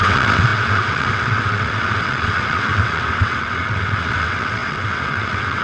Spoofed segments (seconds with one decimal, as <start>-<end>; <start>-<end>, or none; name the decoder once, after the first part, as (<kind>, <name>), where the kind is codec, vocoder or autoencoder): 0.0-5.6 (vocoder, WaveNeXt)